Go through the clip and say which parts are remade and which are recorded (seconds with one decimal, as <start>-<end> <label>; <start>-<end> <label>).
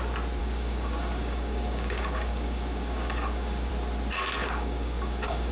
0.0-0.4 recorded; 0.4-3.7 remade; 3.7-4.4 recorded; 4.4-5.5 remade